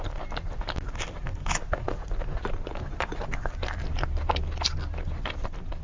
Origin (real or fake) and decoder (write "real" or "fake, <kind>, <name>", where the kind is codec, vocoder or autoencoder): real